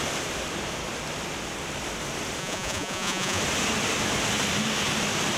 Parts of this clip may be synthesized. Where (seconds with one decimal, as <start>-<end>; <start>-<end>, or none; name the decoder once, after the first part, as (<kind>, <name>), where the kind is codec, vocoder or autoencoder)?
2.4-3.4 (vocoder, Vocos)